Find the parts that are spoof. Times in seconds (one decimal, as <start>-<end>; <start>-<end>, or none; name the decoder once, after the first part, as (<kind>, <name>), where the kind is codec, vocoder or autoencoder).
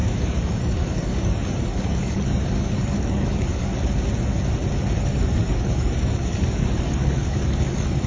0.0-3.7 (codec, DAC); 5.0-8.1